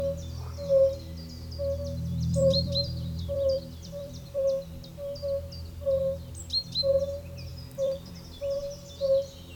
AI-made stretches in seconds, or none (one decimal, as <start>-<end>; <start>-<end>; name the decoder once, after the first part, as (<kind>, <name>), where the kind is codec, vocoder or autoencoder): 2.1-4.4 (vocoder, BigVGAN v2); 7.5-8.1